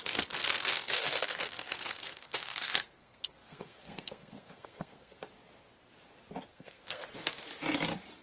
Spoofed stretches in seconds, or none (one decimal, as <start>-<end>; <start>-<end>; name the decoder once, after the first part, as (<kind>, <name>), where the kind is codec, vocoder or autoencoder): 0.4-5.2 (codec, SNAC); 6.5-7.0